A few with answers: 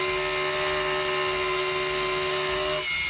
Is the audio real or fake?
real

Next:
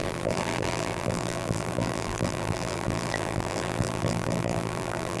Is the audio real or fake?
fake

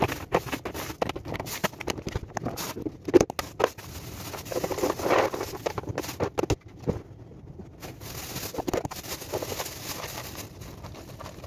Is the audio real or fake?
real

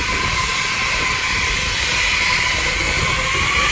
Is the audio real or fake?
real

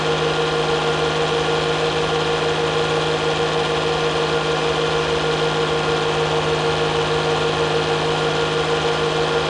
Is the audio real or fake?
real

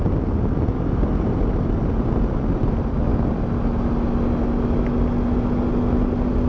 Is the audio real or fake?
real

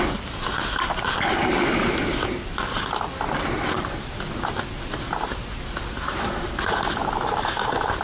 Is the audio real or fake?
real